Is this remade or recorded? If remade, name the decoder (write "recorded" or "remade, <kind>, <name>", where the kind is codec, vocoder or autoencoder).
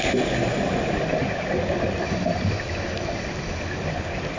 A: recorded